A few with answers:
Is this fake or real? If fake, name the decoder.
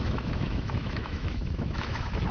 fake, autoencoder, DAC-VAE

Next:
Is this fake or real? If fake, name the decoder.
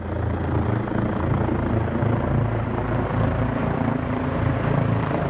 real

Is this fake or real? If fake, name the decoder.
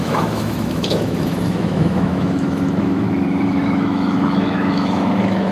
fake, autoencoder, DAC-VAE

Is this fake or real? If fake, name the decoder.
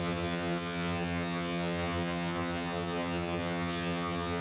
fake, vocoder, HiFi-GAN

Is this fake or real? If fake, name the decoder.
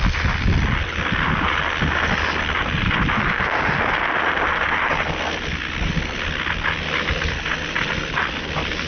real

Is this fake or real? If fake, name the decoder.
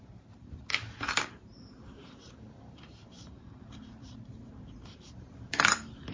fake, vocoder, BigVGAN v2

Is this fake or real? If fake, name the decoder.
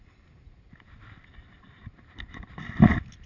real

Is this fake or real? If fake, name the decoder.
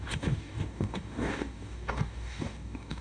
fake, codec, DAC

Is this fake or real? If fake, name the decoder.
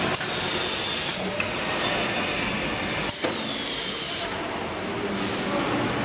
real